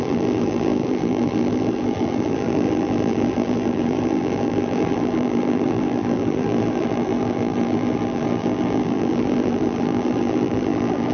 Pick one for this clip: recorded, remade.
remade